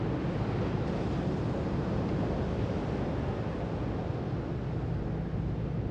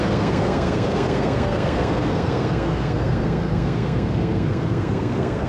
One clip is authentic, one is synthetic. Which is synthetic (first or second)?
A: second